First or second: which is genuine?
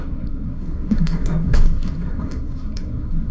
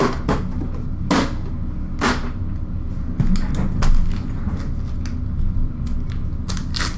second